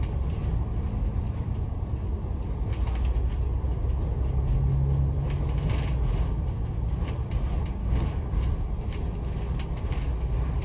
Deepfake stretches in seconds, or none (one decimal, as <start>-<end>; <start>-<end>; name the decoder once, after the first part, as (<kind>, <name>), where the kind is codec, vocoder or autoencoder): 7.8-8.4 (codec, DAC)